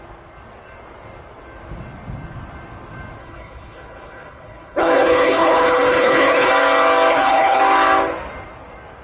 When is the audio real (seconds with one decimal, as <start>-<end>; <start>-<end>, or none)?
0.0-3.2; 6.5-7.1; 7.6-9.0